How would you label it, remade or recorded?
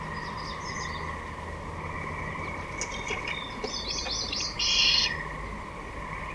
recorded